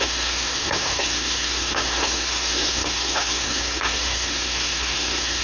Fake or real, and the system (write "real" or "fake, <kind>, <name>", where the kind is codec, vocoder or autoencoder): fake, codec, SNAC